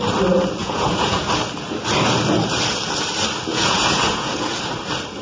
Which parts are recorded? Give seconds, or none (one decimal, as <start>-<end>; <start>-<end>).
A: 0.0-0.6; 1.3-3.5; 4.6-5.2

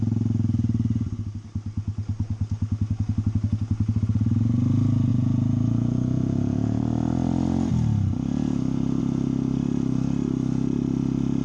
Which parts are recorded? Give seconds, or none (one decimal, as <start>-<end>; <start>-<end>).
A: 0.0-5.1; 6.8-11.4

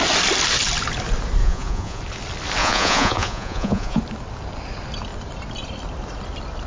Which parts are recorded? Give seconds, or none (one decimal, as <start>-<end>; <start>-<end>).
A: 0.0-1.4; 2.0-2.6; 4.0-6.7

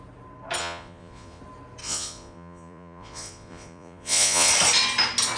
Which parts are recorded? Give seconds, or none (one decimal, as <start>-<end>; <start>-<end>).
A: 0.0-0.6; 1.4-1.8; 4.5-5.4

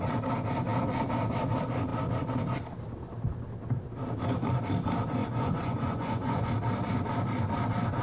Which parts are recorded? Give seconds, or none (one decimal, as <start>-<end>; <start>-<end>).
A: 0.0-5.2; 6.5-8.0

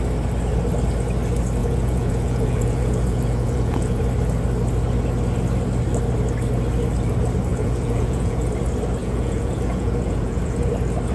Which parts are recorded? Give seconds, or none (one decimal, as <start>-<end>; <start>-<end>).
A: 0.0-1.6; 4.0-7.5; 8.5-9.0; 10.7-11.1